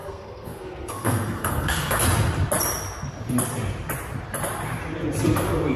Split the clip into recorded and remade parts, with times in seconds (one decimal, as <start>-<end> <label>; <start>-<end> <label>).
0.0-2.0 remade; 2.0-5.8 recorded